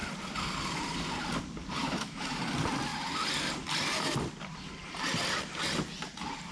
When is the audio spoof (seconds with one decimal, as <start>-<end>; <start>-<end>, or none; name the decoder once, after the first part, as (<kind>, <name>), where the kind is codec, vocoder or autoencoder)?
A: 1.8-2.4 (autoencoder, DAC-VAE)